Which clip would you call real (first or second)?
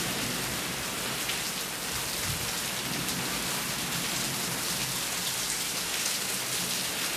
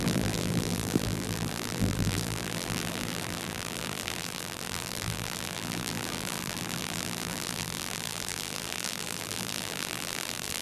first